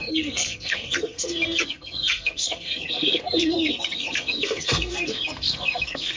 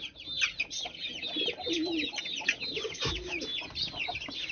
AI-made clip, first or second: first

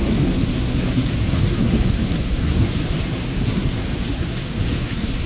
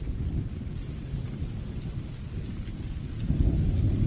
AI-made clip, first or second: first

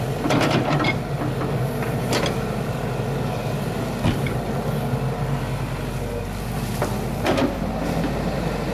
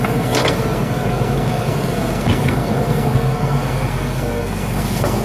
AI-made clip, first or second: second